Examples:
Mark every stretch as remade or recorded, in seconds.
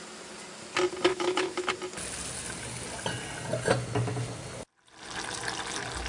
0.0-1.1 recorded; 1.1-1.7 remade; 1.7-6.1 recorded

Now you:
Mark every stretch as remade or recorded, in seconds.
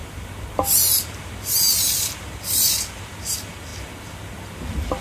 0.0-5.0 recorded